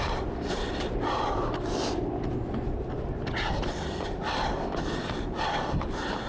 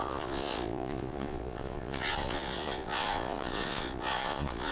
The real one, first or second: first